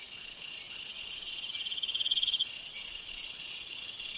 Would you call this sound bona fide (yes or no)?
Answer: no